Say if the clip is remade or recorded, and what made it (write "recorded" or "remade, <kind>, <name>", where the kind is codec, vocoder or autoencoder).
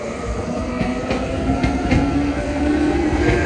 remade, codec, SNAC